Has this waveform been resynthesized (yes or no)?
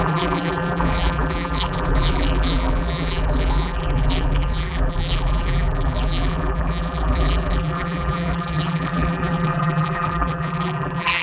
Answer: yes